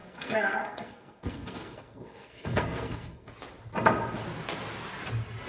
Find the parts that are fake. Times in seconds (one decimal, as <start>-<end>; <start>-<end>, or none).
0.0-3.3